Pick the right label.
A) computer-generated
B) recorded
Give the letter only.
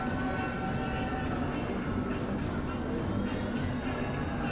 B